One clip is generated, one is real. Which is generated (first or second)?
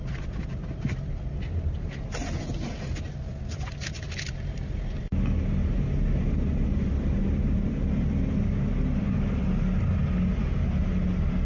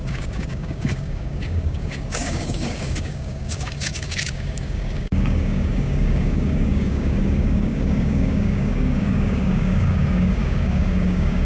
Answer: second